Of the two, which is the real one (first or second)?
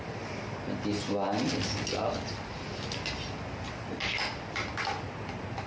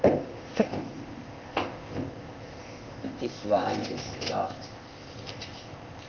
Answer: first